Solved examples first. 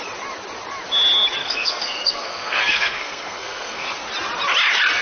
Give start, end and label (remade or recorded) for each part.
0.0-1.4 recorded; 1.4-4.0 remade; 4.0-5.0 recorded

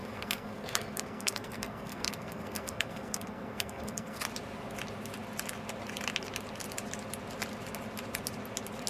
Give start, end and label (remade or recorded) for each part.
0.0-4.2 remade; 4.2-8.9 recorded

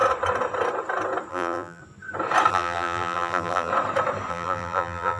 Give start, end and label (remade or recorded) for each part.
0.0-1.3 recorded; 1.3-1.8 remade; 1.8-2.5 recorded; 2.5-3.7 remade; 3.7-4.3 recorded; 4.3-5.2 remade

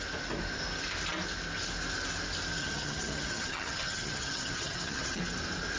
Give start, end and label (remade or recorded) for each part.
0.0-2.6 recorded; 2.6-5.2 remade; 5.2-5.8 recorded

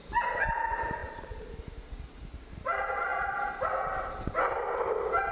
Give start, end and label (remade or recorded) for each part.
0.0-1.0 recorded; 1.0-1.5 remade; 1.5-5.3 recorded

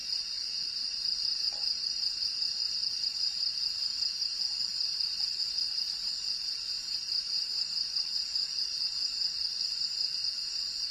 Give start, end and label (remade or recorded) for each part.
0.0-0.7 recorded; 0.7-10.9 remade

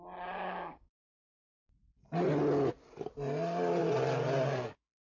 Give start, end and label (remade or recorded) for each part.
0.0-5.1 recorded

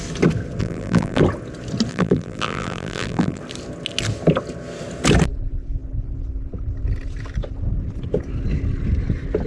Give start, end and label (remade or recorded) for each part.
0.0-0.6 recorded; 0.6-1.2 remade; 1.2-1.9 recorded; 1.9-3.4 remade; 3.4-9.5 recorded